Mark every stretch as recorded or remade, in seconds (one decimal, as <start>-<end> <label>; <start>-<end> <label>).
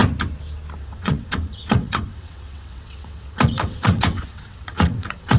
0.0-0.8 recorded; 0.8-5.4 remade